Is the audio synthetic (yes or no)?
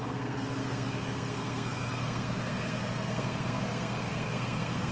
yes